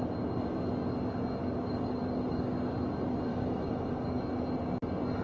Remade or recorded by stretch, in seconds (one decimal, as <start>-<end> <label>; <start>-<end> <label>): 0.0-1.4 recorded; 1.4-2.7 remade; 2.7-3.3 recorded; 3.3-4.2 remade; 4.2-5.2 recorded